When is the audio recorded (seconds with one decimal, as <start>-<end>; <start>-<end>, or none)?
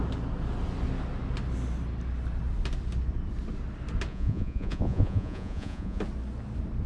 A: 0.0-4.1; 6.0-6.9